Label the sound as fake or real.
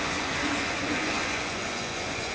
fake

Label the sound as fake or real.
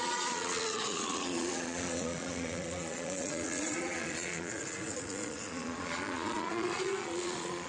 fake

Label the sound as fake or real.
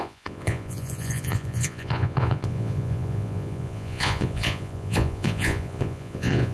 fake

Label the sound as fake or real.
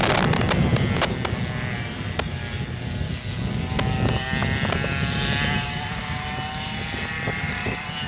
real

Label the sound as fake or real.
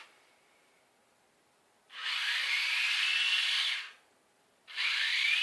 real